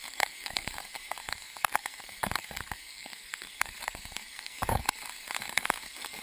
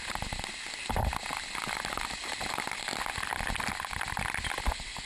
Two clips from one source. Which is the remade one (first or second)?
first